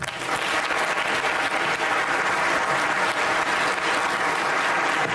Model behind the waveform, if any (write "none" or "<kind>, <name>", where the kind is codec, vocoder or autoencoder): none